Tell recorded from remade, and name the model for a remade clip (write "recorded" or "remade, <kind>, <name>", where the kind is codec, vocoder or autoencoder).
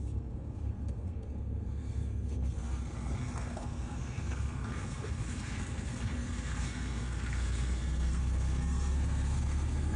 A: remade, codec, SNAC